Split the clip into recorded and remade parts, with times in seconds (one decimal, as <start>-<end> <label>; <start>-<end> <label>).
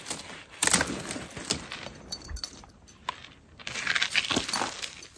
0.0-5.2 recorded